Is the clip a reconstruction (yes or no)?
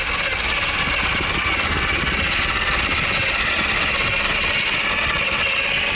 no